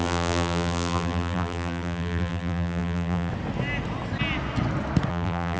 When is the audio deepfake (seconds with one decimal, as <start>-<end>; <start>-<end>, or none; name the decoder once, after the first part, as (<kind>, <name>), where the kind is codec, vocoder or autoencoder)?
0.0-3.3 (vocoder, BigVGAN v2); 5.1-5.6